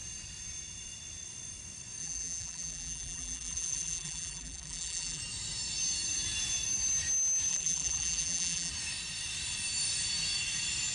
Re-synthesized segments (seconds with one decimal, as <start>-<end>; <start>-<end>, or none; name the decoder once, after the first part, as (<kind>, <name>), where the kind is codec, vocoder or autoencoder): 2.0-5.2 (vocoder, BigVGAN v2); 7.5-8.7